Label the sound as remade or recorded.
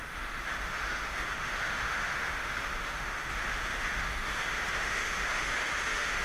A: remade